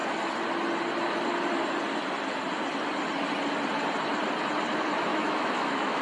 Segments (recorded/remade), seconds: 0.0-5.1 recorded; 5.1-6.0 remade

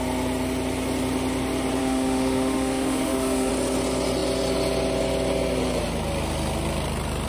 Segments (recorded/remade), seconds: 0.0-1.8 recorded; 1.8-3.5 remade; 3.5-7.3 recorded

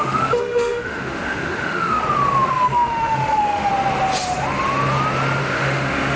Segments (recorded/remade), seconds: 0.0-2.0 remade; 2.0-2.5 recorded; 2.5-3.7 remade; 3.7-5.4 recorded; 5.4-6.2 remade

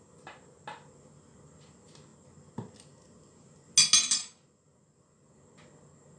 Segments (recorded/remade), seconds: 0.0-6.2 recorded

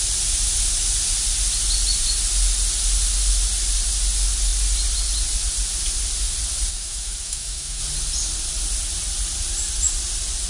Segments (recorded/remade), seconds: 0.0-6.7 recorded; 6.7-7.8 remade; 7.8-10.5 recorded

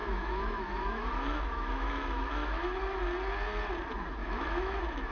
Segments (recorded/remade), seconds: 0.0-3.0 remade; 3.0-4.2 recorded; 4.2-5.1 remade